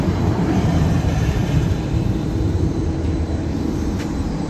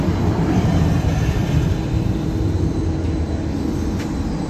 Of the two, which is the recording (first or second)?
second